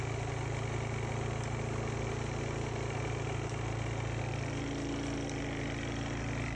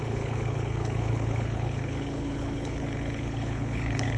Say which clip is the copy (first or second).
second